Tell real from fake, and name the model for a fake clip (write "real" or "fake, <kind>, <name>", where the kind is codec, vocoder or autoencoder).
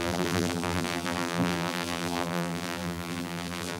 fake, vocoder, BigVGAN v2